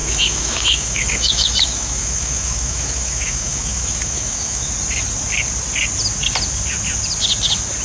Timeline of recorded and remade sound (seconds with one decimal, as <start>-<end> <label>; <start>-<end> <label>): 0.0-4.7 remade; 4.7-7.8 recorded